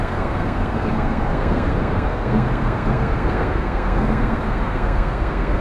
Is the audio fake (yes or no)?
yes